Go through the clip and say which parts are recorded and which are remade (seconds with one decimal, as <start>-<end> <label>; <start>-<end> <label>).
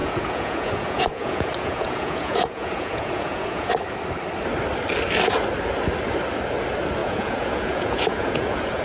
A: 0.0-3.7 remade; 3.7-7.0 recorded; 7.0-8.8 remade